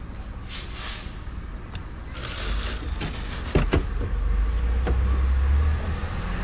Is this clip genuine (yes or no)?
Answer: yes